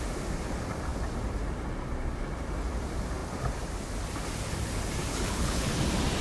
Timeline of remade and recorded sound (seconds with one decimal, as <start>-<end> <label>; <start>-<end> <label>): 0.0-5.1 recorded; 5.1-5.7 remade; 5.7-6.2 recorded